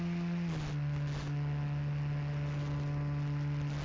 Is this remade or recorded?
recorded